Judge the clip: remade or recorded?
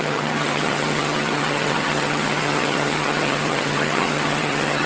remade